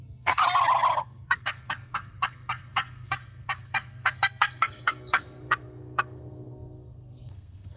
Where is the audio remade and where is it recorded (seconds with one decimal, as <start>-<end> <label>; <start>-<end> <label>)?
0.0-0.4 remade; 0.4-1.0 recorded; 1.0-7.8 remade